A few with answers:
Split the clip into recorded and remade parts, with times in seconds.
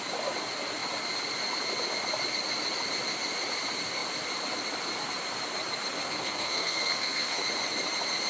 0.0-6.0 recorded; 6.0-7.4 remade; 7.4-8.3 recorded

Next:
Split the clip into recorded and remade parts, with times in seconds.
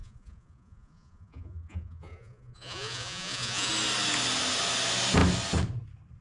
0.0-3.7 remade; 3.7-6.2 recorded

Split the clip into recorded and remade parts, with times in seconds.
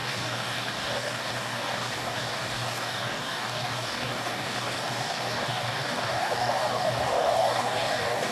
0.0-8.3 remade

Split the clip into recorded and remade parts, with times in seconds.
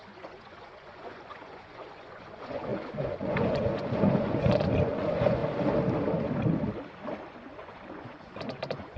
0.0-5.4 remade; 5.4-7.2 recorded; 7.2-9.0 remade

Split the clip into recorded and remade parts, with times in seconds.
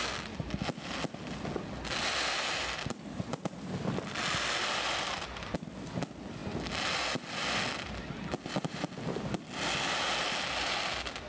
0.0-11.3 recorded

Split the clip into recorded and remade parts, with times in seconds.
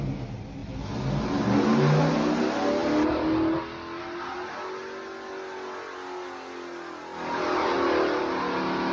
0.0-8.9 recorded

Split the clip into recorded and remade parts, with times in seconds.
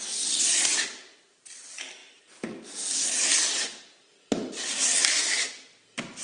0.0-6.2 recorded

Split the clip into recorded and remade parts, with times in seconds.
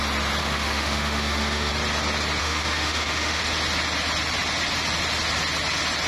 0.0-0.4 recorded; 0.4-1.7 remade; 1.7-2.4 recorded; 2.4-3.4 remade; 3.4-6.1 recorded